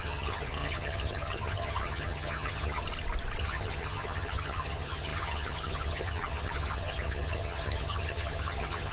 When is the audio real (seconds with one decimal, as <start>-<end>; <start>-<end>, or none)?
2.8-3.4